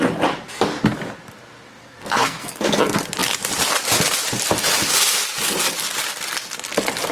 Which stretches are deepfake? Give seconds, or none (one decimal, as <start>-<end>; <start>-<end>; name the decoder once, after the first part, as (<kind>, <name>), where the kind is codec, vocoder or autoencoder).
1.7-2.8 (codec, SNAC)